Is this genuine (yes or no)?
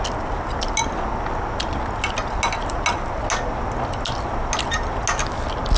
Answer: yes